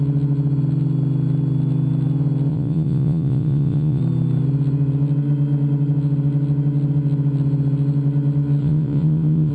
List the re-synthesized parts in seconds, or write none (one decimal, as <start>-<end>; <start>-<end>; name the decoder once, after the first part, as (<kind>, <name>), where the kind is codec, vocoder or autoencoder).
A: 2.5-4.0 (vocoder, Vocos); 8.6-9.5